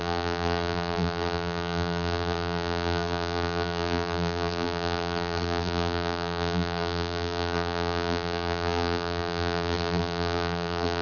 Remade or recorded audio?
remade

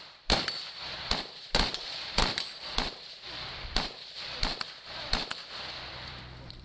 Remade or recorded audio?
remade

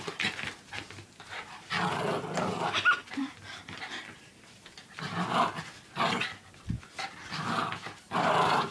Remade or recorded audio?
recorded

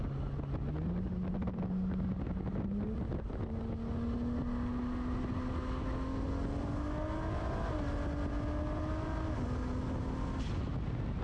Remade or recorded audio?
recorded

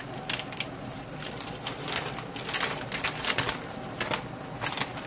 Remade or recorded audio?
recorded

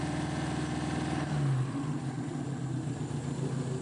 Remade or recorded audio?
recorded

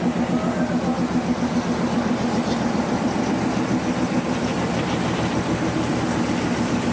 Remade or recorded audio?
recorded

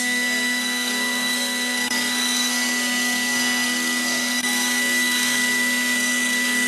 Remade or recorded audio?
remade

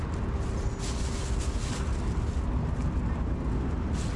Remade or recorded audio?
recorded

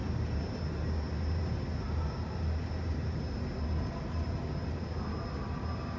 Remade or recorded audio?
recorded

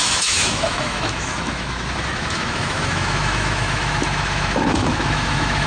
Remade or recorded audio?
remade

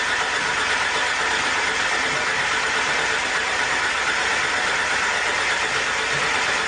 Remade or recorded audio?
recorded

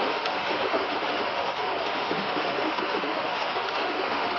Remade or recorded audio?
remade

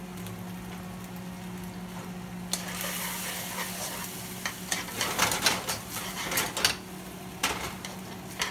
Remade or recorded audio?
recorded